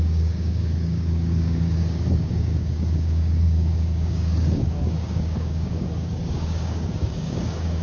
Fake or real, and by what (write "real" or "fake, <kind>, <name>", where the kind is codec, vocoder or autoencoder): fake, codec, DAC